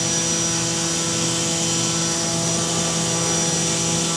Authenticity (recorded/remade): recorded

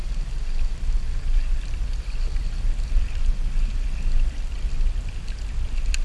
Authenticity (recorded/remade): recorded